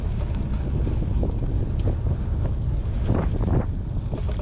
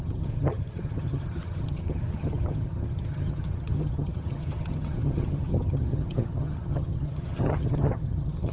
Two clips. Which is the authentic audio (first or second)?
first